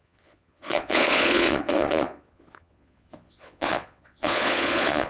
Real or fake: fake